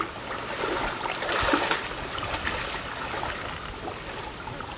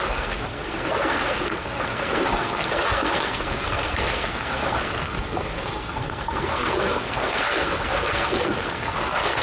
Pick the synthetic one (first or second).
second